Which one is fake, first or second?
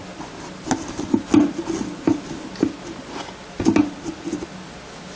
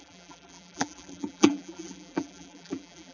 second